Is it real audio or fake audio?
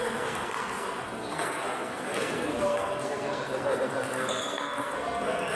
fake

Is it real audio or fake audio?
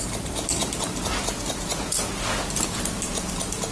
real